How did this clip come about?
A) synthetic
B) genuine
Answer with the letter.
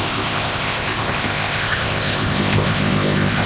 A